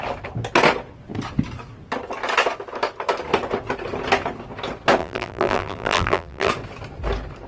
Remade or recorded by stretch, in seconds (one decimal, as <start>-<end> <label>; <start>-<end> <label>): 0.0-5.0 recorded; 5.0-6.5 remade; 6.5-7.5 recorded